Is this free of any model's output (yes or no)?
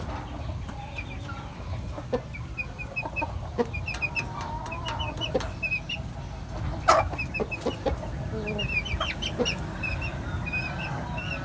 yes